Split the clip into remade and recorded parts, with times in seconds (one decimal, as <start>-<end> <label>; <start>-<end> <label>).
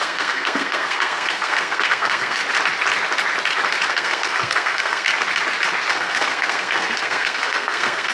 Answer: 0.0-2.4 remade; 2.4-3.9 recorded; 3.9-5.1 remade; 5.1-5.9 recorded; 5.9-8.1 remade